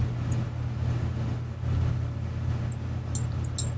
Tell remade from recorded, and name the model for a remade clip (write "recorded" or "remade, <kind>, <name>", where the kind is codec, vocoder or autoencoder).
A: recorded